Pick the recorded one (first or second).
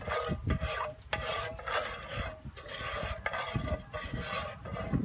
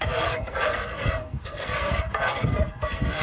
first